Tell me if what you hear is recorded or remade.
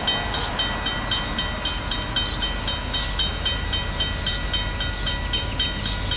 recorded